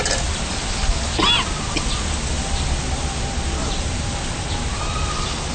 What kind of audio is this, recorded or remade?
recorded